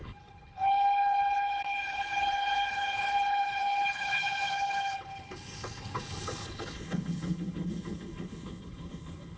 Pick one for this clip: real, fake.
fake